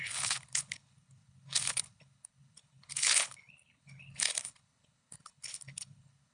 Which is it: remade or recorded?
remade